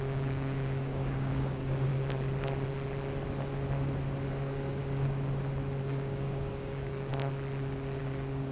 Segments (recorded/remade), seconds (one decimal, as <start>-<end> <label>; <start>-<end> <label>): 0.0-1.9 remade; 1.9-4.3 recorded; 4.3-4.8 remade; 4.8-5.8 recorded; 5.8-7.1 remade; 7.1-8.0 recorded; 8.0-8.5 remade